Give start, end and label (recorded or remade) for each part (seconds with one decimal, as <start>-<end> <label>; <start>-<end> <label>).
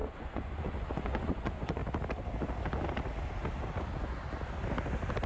0.0-1.8 remade; 1.8-5.3 recorded